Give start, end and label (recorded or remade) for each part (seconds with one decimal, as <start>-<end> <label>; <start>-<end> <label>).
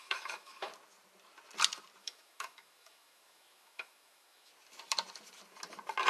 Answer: 0.0-0.7 remade; 0.7-2.0 recorded; 2.0-4.5 remade; 4.5-6.1 recorded